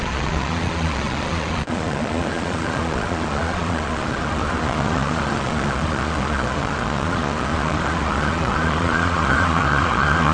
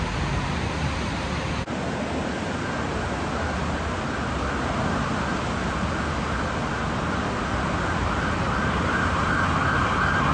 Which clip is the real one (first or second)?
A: second